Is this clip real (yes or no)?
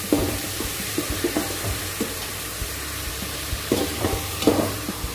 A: no